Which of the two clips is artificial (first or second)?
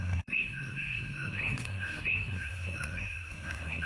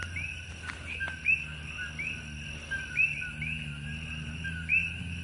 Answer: first